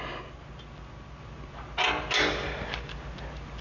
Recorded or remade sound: recorded